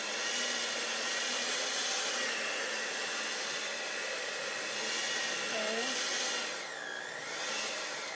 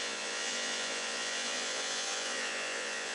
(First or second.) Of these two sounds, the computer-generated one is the second